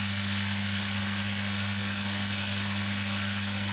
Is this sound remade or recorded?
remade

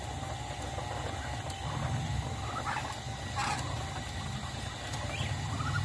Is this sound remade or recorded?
recorded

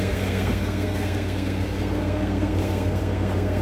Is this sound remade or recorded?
remade